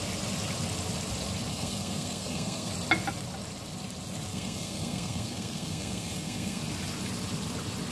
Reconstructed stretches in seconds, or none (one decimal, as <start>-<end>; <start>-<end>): 1.5-2.7; 4.3-6.6